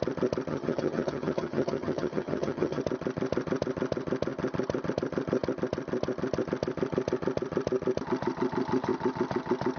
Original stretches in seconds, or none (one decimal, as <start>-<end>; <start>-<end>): 0.0-0.5; 2.8-9.8

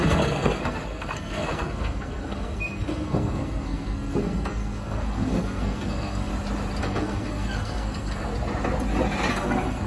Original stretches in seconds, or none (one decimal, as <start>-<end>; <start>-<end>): 6.3-6.8; 8.3-9.3